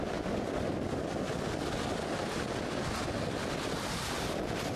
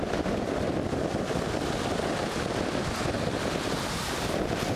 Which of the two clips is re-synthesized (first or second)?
second